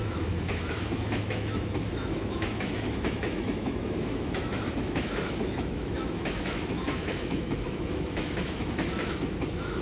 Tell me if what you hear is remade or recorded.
remade